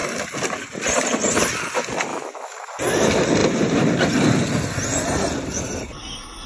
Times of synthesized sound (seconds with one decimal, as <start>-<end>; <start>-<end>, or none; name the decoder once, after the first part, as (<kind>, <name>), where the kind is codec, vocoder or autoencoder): 2.1-2.8 (autoencoder, DAC-VAE)